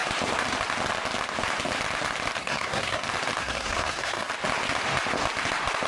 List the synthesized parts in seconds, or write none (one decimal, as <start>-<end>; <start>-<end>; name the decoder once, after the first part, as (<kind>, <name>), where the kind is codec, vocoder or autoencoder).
2.4-3.0 (codec, SNAC); 3.4-4.3